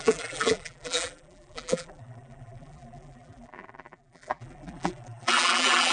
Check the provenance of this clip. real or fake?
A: fake